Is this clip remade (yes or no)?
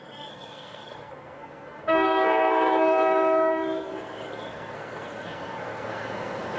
yes